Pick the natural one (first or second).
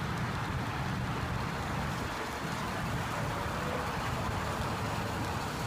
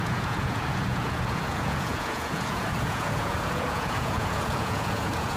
first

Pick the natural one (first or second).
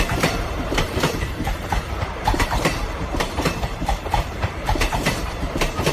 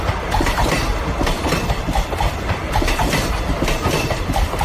second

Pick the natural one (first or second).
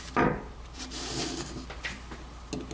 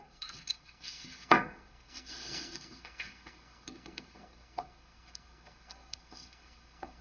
first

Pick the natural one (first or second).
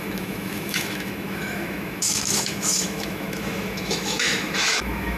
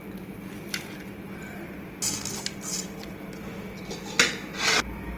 second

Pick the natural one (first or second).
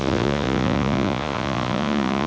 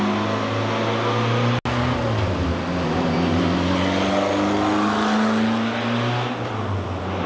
second